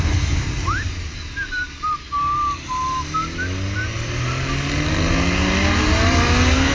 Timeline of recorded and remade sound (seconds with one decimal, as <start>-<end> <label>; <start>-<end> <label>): 0.0-6.7 recorded